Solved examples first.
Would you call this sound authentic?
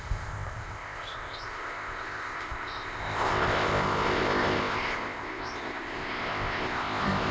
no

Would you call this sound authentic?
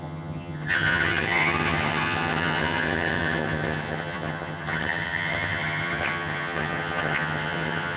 no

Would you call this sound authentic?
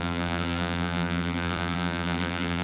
no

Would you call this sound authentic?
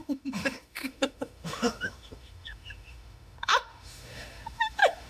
no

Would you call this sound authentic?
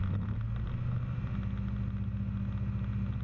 yes